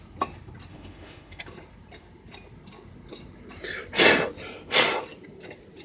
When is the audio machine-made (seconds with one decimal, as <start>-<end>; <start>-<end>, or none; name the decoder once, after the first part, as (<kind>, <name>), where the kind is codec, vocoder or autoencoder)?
0.7-1.4 (autoencoder, DAC-VAE)